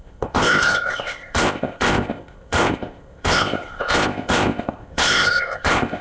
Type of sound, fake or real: fake